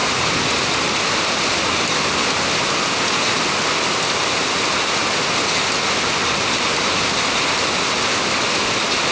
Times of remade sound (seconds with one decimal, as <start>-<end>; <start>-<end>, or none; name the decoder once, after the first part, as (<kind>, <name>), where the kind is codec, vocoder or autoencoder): none